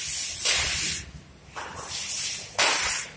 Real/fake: real